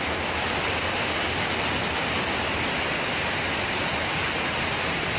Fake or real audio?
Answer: real